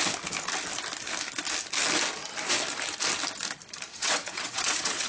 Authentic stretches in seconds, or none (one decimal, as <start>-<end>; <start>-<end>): 0.0-3.9